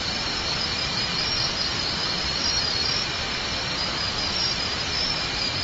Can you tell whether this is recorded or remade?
recorded